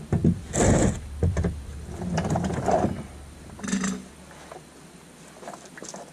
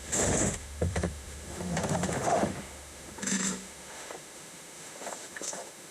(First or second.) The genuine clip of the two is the first